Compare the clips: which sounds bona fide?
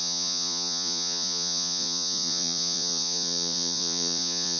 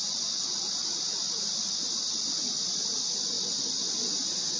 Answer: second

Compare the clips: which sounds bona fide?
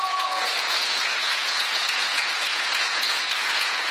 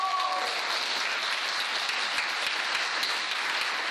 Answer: second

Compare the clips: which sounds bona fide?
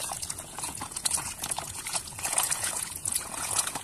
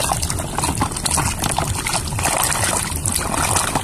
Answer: second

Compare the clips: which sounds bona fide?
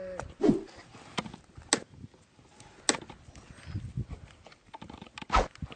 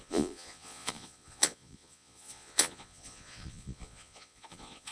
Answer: first